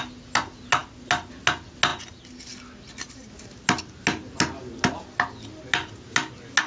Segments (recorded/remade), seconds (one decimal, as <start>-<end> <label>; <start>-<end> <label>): 0.0-6.7 recorded